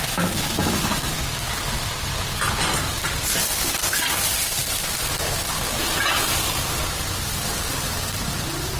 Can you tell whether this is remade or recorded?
recorded